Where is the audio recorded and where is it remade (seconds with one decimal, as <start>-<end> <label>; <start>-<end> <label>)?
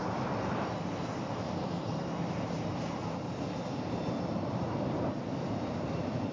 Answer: 0.0-3.0 remade; 3.0-3.7 recorded; 3.7-6.3 remade